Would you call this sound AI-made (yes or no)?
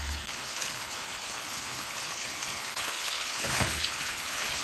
yes